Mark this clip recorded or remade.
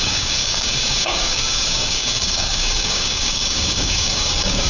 remade